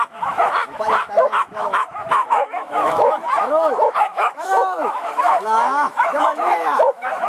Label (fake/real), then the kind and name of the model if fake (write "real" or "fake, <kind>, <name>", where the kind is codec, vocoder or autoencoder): fake, autoencoder, DAC-VAE